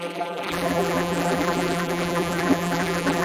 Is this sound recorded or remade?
remade